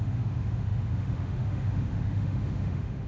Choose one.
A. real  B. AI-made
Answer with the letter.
B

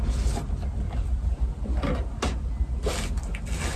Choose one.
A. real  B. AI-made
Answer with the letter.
A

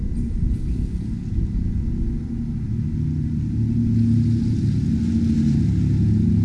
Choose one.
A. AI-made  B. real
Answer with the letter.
B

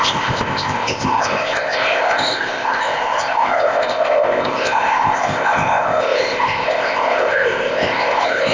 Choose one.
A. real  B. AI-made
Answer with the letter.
B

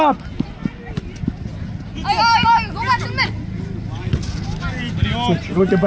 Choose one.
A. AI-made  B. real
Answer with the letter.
B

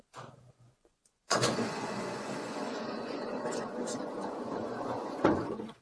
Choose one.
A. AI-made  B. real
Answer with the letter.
A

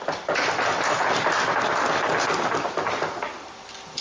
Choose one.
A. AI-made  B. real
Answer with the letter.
B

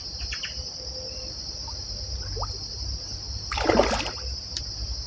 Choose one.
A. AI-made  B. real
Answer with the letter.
B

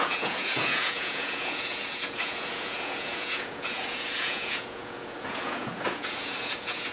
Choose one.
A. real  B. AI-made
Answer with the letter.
B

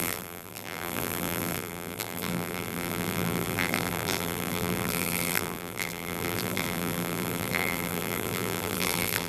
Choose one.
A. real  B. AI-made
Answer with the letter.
B